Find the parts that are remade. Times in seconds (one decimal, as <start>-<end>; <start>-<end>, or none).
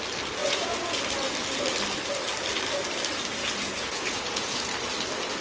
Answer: 0.4-1.0; 3.4-4.7